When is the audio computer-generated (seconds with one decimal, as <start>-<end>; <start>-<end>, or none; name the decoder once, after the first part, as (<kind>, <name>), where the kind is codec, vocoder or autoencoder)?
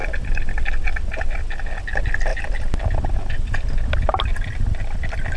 none